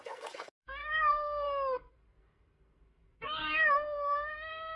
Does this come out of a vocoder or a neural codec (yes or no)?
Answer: yes